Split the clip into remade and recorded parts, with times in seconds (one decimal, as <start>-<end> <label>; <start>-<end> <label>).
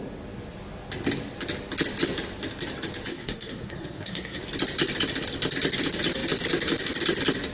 0.0-3.1 recorded; 3.1-4.4 remade; 4.4-7.5 recorded